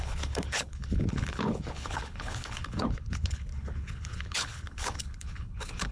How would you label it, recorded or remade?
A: remade